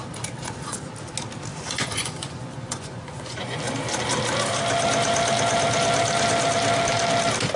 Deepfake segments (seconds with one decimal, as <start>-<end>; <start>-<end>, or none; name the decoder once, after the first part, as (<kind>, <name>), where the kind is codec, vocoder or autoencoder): 0.4-0.9 (vocoder, Vocos); 1.5-3.6